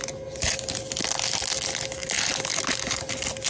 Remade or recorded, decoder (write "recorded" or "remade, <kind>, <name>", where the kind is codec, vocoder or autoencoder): recorded